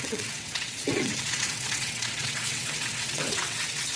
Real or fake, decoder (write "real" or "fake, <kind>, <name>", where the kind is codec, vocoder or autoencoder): fake, vocoder, WaveNeXt